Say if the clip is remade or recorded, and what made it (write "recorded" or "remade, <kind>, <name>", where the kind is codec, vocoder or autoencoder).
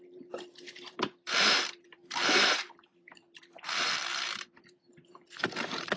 remade, vocoder, BigVGAN v2